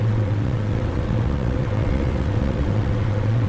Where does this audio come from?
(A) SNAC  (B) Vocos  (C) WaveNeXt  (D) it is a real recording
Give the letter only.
C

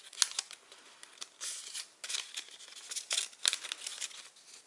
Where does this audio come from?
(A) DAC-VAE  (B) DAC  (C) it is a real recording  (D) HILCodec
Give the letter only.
C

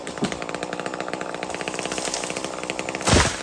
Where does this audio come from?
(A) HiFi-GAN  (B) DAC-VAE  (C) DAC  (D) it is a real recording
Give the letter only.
D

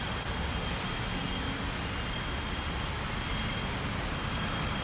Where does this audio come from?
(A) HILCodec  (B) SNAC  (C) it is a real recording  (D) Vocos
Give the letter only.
C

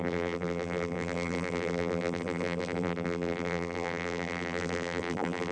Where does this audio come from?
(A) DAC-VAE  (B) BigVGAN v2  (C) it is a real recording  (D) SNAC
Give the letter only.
B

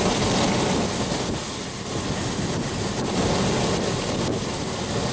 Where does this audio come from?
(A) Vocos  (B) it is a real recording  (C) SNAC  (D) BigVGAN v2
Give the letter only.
B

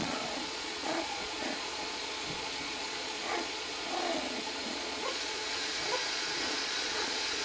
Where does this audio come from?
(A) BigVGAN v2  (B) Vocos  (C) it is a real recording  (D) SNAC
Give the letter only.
B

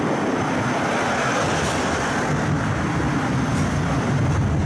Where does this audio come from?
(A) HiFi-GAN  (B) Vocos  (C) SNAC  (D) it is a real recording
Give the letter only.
D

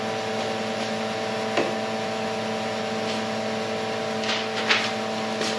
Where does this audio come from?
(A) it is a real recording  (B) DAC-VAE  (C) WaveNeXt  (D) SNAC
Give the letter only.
A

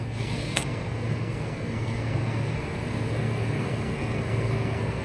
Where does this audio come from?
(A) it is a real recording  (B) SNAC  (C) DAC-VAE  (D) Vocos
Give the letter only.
B